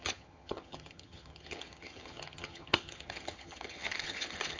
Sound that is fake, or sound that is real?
fake